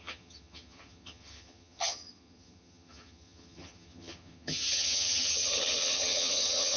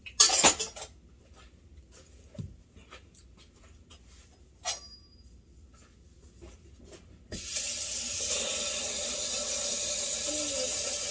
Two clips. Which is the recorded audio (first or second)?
second